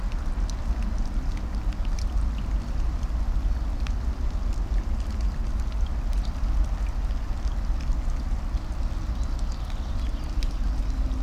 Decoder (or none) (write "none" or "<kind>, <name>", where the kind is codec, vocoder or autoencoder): none